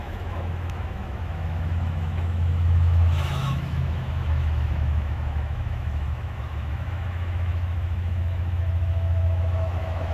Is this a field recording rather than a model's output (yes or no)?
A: no